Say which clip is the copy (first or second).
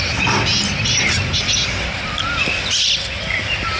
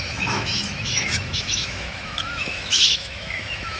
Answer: second